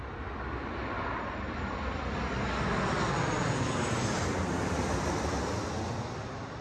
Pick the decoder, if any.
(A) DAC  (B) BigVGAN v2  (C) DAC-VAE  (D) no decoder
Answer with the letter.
D